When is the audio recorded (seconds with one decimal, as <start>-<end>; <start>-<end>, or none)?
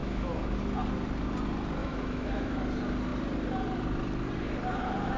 0.6-1.8; 2.6-5.2